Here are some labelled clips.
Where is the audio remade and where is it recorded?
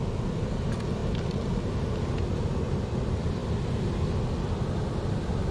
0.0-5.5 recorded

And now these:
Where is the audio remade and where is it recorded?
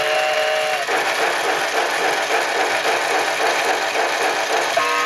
0.0-5.1 recorded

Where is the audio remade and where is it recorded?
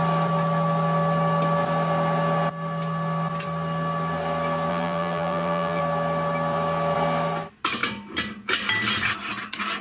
0.0-4.7 recorded; 4.7-5.8 remade; 5.8-9.8 recorded